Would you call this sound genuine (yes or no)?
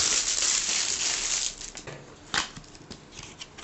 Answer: yes